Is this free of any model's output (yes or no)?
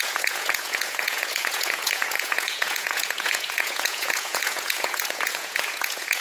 no